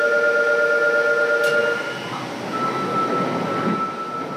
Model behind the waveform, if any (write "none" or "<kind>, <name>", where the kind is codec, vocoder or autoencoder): none